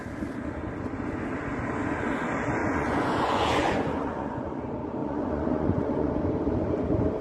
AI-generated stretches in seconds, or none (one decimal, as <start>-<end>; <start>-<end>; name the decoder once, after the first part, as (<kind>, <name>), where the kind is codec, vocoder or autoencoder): 2.6-4.6 (vocoder, Vocos); 5.0-6.1